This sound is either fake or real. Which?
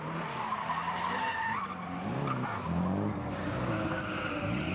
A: real